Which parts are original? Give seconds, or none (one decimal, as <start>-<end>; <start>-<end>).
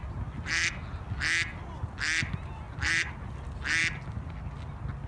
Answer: 0.0-5.1